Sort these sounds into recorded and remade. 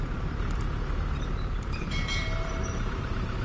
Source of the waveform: remade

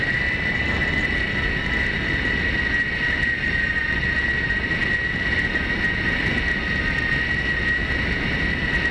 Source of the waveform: recorded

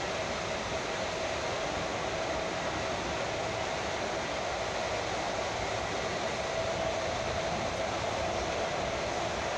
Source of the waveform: recorded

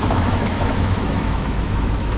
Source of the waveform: remade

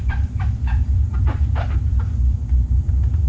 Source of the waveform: remade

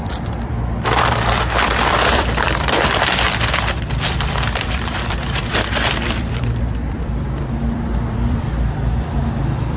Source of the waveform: remade